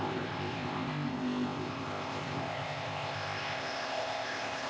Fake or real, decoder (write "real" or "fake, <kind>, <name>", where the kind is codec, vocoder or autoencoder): fake, codec, ZipCodec